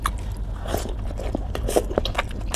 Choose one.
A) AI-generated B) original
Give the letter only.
A